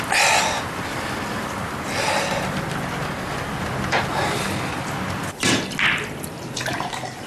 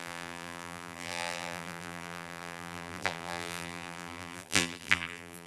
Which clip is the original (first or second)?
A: first